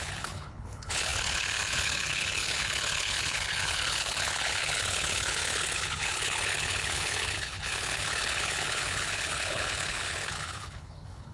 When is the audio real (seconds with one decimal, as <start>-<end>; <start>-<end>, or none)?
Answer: none